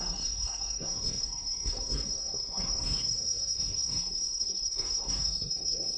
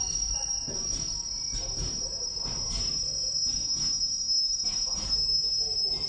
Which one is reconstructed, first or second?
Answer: first